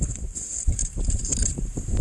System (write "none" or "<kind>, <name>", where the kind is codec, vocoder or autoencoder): vocoder, BigVGAN v2